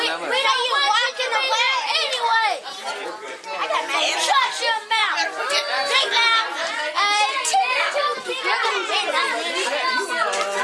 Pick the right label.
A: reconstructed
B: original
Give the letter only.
B